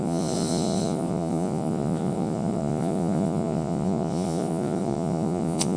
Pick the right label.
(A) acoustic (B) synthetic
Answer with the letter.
B